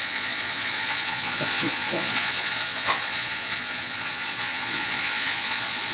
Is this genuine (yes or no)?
no